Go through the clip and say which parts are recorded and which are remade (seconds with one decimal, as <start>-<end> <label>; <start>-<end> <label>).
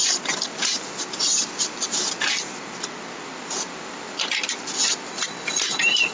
0.0-6.1 recorded